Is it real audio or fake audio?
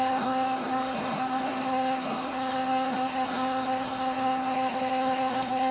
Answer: fake